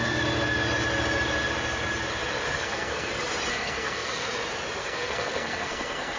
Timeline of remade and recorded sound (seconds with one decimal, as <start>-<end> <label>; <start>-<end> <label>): 0.0-2.6 recorded; 2.6-3.1 remade; 3.1-3.5 recorded; 3.5-4.3 remade; 4.3-4.8 recorded; 4.8-6.2 remade